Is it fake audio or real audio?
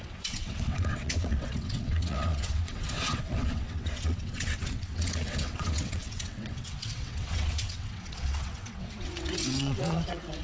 fake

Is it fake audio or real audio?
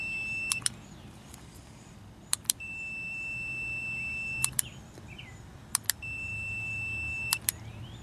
fake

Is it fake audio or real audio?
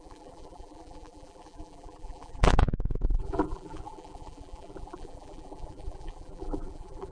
fake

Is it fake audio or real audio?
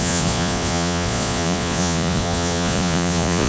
fake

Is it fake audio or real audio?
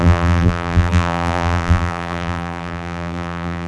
fake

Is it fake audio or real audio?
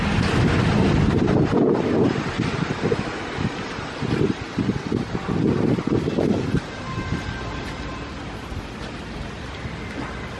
real